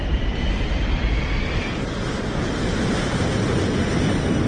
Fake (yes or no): no